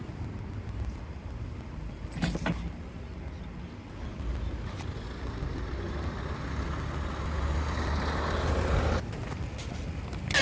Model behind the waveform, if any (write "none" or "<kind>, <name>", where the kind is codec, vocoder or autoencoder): none